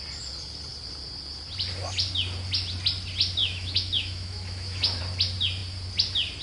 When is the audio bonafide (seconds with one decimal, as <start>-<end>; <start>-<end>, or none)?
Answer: 0.0-3.4; 5.0-6.4